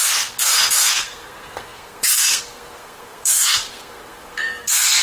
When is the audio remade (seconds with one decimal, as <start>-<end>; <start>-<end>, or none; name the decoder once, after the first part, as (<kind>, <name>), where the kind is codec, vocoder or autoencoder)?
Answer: 0.0-5.0 (codec, SNAC)